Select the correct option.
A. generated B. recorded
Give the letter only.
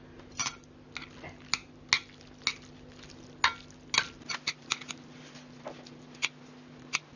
B